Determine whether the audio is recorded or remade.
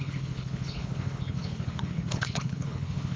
remade